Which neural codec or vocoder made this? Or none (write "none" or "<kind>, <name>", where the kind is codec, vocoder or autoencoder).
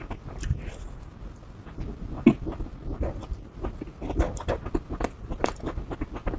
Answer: none